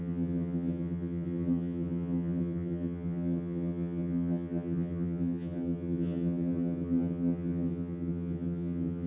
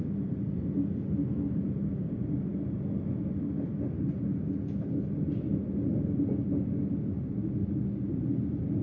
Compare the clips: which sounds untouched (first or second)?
second